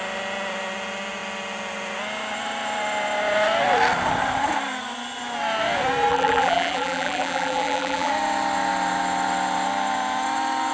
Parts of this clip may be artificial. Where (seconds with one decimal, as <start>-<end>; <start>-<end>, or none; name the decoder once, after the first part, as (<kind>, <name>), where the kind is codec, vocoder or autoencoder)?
6.1-8.1 (vocoder, BigVGAN v2)